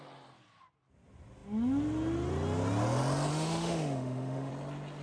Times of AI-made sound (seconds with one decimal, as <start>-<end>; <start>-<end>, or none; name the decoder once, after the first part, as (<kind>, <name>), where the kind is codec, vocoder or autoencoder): 3.3-4.5 (autoencoder, DAC-VAE)